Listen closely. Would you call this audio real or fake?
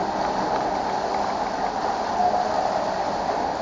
real